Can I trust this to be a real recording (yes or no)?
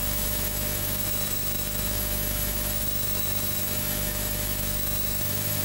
no